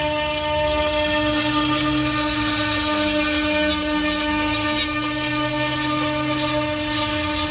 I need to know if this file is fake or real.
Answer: real